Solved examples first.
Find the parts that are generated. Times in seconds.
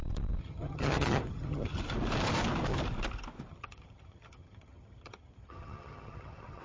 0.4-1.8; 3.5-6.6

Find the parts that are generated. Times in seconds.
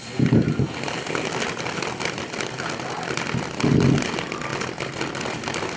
none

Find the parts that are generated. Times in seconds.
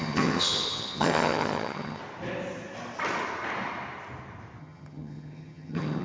0.0-2.0; 4.6-6.0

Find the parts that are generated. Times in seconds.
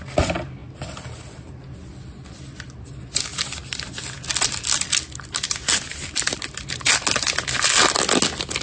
none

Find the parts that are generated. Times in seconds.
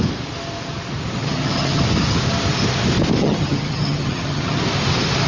1.2-1.8; 3.2-4.6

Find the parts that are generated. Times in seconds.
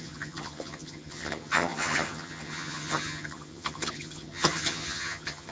0.0-5.5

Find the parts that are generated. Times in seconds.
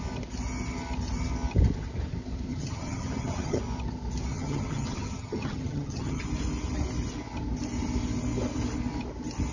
2.5-3.6; 4.3-6.2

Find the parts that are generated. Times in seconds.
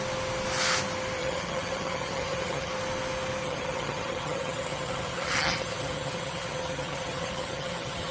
1.2-2.7; 3.4-8.1